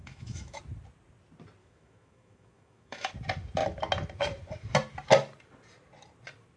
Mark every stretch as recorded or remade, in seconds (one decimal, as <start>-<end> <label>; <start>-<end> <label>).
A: 0.0-0.6 remade; 0.6-1.6 recorded; 1.6-3.1 remade; 3.1-6.6 recorded